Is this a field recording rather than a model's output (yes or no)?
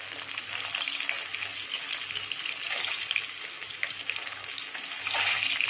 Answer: yes